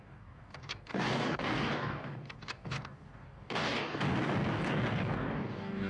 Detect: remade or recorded remade